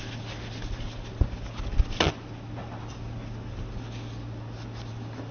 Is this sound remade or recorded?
recorded